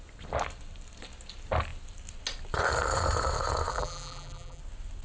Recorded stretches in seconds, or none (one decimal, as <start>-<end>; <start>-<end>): 0.0-3.7; 4.6-5.0